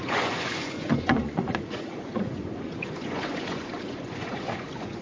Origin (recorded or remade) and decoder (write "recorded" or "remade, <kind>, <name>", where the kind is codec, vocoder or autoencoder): remade, vocoder, Vocos